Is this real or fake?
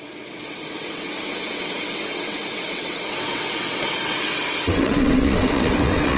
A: fake